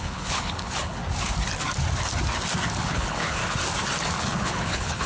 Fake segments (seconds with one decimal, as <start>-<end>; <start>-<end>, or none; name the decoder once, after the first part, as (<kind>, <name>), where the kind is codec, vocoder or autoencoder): 0.0-1.0 (codec, HILCodec); 2.8-3.4; 4.2-5.1